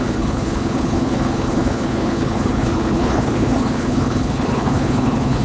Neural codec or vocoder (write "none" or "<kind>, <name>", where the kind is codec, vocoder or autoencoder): codec, HILCodec